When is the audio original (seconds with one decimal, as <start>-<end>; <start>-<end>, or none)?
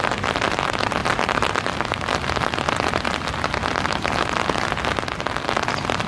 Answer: 0.0-6.1